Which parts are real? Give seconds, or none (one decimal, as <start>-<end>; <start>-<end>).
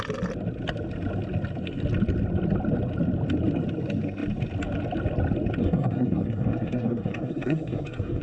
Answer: 0.0-5.6